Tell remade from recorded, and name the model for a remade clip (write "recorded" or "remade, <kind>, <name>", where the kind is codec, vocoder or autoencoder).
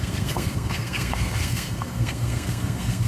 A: remade, codec, SNAC